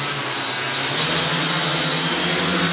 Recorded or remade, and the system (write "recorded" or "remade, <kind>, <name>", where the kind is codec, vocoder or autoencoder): recorded